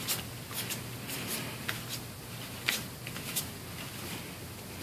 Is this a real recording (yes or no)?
yes